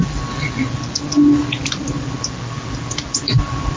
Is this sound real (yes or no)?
yes